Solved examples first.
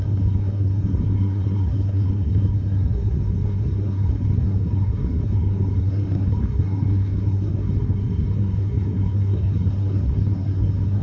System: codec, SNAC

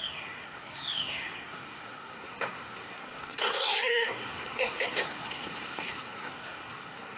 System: codec, SNAC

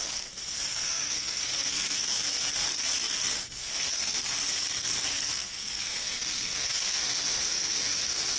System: codec, SNAC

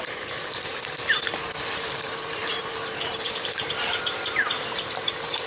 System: vocoder, BigVGAN v2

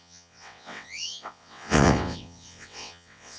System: vocoder, WaveNeXt